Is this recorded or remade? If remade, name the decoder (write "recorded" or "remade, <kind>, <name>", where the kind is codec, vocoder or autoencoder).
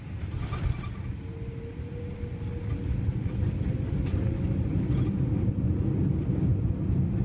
recorded